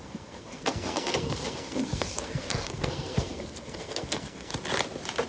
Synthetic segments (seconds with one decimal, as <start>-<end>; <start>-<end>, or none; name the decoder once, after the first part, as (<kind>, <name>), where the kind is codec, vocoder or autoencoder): 0.0-4.5 (codec, SNAC)